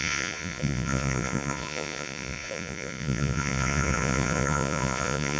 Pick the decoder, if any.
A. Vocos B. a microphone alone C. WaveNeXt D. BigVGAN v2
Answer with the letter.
A